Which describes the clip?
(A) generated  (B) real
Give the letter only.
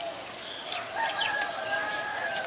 B